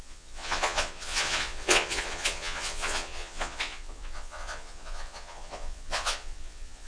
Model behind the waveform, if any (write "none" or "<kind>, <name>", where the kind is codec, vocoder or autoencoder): vocoder, Vocos